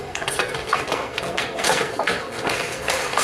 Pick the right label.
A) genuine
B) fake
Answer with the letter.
B